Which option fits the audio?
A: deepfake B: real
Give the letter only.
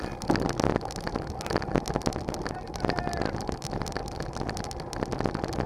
B